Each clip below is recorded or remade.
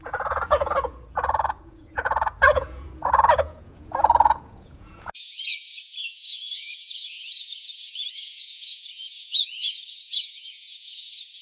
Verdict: remade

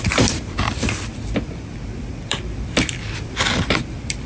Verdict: remade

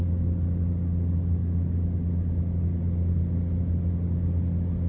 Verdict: recorded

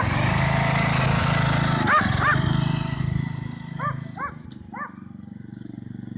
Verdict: recorded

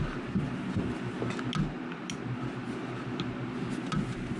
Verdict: recorded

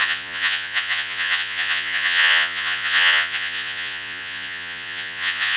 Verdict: remade